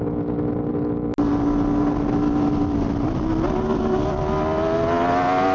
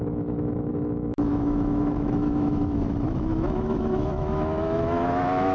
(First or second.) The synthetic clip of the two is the second